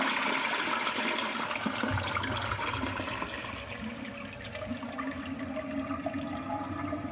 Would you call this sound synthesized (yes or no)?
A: no